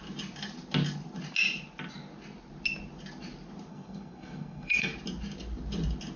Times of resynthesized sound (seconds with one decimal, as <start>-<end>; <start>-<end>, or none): 3.7-4.9